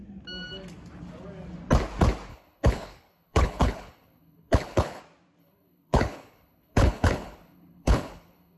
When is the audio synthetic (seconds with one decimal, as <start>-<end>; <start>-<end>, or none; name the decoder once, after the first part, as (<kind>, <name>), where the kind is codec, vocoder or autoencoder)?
2.3-5.0 (codec, HILCodec); 5.4-8.6